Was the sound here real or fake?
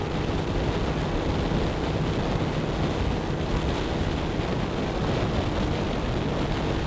real